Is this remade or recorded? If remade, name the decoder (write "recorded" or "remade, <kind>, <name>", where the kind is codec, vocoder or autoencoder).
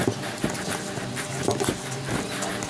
recorded